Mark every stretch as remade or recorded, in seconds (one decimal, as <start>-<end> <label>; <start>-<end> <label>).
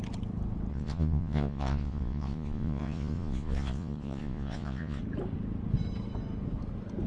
0.0-0.7 recorded; 0.7-5.0 remade; 5.0-7.1 recorded